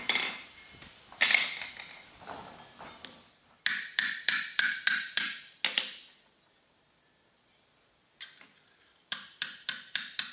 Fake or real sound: real